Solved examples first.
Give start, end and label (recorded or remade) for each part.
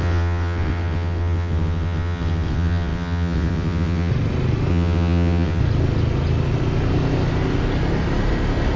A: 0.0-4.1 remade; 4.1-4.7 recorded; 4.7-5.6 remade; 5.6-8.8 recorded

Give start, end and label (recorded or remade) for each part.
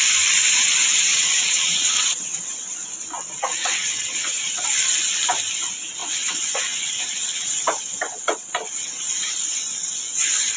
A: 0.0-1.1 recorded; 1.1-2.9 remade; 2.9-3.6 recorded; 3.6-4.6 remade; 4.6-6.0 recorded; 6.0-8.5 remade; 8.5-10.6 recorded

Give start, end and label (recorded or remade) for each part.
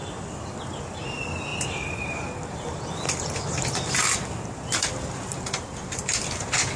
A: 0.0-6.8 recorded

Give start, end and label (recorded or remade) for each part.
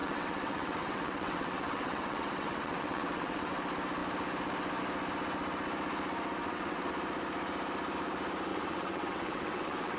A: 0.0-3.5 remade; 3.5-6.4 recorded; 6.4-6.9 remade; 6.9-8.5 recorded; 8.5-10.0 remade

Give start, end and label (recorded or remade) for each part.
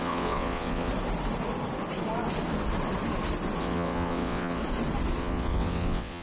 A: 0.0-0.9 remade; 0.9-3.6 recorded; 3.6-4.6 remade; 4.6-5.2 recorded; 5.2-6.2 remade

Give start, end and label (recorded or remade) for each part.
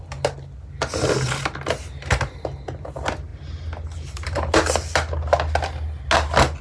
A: 0.0-6.6 recorded